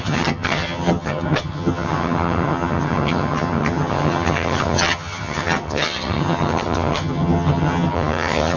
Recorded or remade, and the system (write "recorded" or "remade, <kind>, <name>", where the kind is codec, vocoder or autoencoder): remade, vocoder, HiFi-GAN